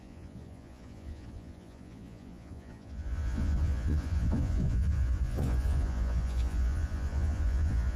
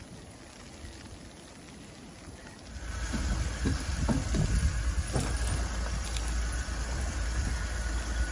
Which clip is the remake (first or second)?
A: first